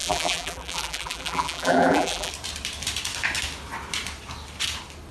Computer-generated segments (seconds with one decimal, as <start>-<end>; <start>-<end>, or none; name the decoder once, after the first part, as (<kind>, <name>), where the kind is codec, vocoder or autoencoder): 0.0-2.3 (vocoder, BigVGAN v2)